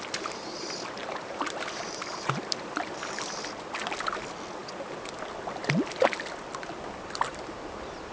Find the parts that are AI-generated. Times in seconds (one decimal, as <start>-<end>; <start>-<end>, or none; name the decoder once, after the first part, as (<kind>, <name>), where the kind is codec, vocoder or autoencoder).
1.0-2.9 (vocoder, BigVGAN v2)